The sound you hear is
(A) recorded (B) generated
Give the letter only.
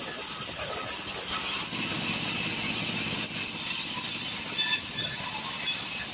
A